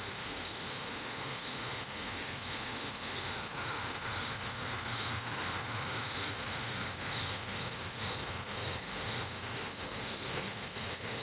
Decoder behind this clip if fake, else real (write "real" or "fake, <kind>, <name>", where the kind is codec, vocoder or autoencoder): fake, autoencoder, DAC-VAE